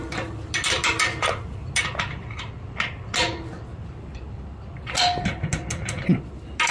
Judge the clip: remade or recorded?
recorded